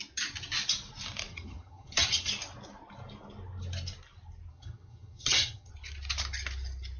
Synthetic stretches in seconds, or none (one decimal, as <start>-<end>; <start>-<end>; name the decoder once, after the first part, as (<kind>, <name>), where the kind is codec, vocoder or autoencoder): 1.3-2.3 (vocoder, HiFi-GAN); 4.5-5.7